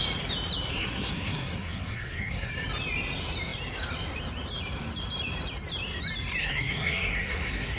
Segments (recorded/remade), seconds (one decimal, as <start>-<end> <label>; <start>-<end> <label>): 0.0-0.7 recorded; 0.7-2.5 remade; 2.5-6.4 recorded; 6.4-7.8 remade